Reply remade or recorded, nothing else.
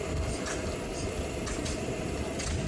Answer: recorded